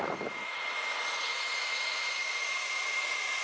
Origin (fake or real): fake